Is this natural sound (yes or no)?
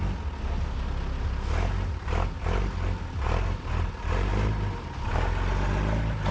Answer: yes